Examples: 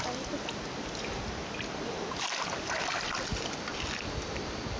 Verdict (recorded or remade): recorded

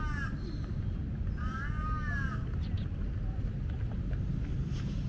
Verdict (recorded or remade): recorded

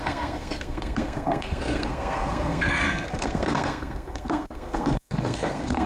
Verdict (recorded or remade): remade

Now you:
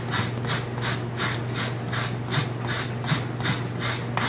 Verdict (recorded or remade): recorded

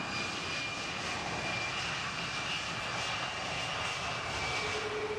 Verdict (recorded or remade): recorded